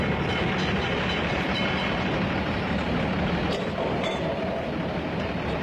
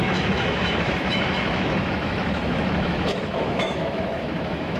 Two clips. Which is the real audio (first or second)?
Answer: first